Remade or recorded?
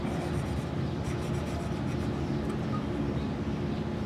recorded